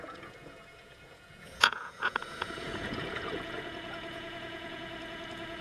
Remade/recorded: remade